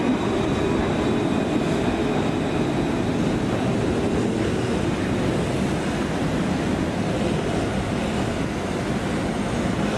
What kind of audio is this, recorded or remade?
recorded